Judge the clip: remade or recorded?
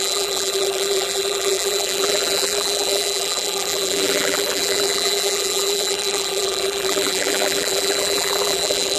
remade